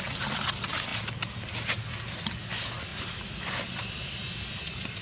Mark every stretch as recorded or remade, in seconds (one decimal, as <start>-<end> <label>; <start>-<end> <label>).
0.0-0.9 recorded; 0.9-1.8 remade; 1.8-5.0 recorded